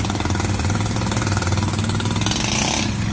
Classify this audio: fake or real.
real